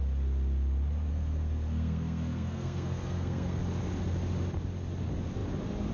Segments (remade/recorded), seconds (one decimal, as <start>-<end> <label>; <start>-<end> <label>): 0.0-1.1 recorded; 1.1-3.6 remade; 3.6-5.9 recorded